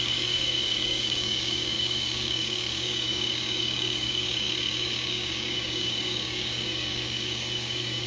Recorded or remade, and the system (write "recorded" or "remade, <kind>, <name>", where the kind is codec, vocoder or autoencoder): remade, codec, DAC